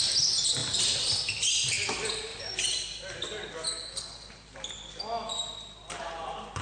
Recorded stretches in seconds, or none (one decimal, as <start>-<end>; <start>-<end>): 0.0-6.6